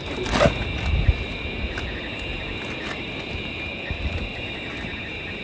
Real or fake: real